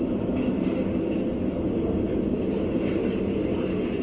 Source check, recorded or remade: recorded